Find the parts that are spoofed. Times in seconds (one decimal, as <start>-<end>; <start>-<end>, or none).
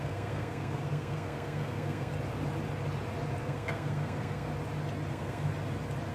0.0-2.1; 3.4-4.5; 5.1-5.5